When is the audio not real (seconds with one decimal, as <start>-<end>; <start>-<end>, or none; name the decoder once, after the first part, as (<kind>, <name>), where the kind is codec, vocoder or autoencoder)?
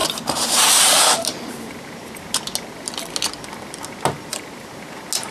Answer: 0.0-2.2 (vocoder, BigVGAN v2); 4.3-4.8